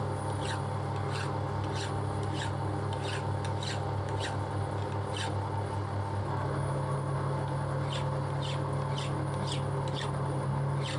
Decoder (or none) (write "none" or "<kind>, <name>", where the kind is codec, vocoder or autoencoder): none